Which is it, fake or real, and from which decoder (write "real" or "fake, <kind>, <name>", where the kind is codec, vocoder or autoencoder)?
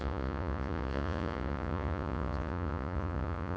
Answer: fake, vocoder, Vocos